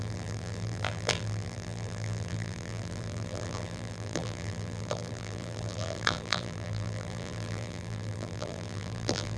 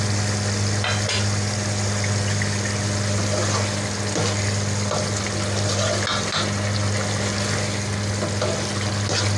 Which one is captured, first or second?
second